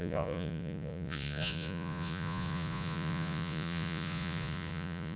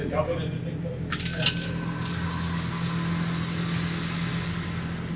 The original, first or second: second